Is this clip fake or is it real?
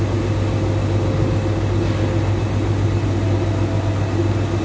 real